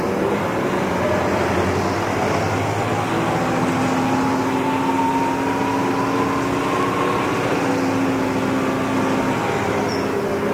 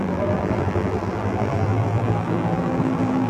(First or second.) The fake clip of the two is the second